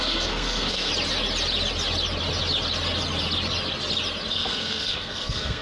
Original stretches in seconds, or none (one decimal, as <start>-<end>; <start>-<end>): 0.9-4.3